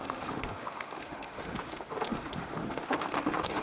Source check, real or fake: fake